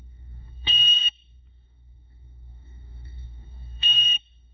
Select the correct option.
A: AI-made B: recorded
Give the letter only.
A